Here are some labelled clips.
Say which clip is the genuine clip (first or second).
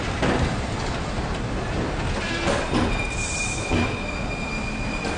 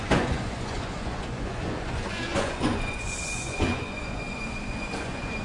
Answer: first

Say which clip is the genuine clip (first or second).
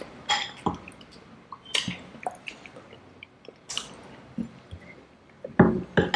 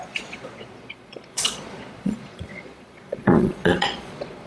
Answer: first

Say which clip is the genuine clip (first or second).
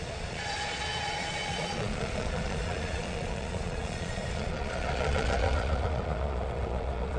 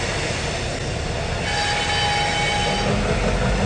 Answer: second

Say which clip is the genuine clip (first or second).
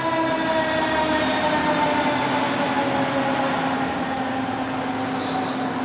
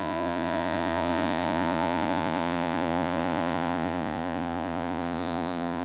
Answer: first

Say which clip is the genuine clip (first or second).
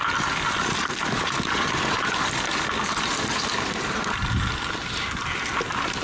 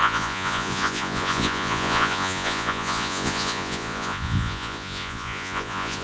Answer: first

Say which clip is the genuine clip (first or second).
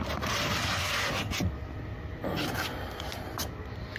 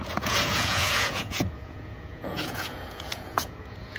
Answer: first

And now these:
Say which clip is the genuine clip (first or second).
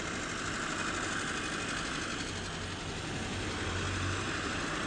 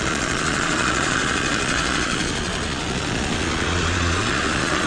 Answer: first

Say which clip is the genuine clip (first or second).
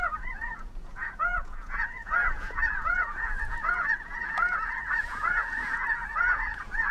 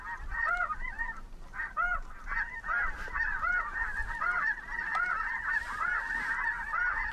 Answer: second